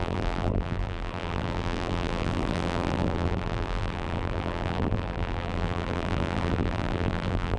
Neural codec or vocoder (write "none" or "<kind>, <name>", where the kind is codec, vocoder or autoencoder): vocoder, BigVGAN v2